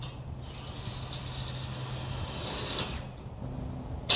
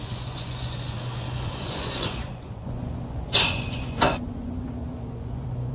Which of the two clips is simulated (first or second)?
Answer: second